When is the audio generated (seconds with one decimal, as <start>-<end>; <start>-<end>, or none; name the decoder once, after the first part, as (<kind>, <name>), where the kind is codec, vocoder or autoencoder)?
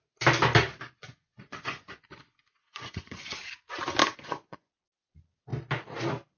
1.0-3.4 (vocoder, Vocos); 4.0-4.7